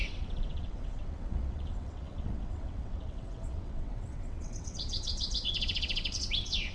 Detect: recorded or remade remade